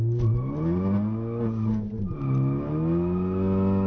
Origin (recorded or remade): recorded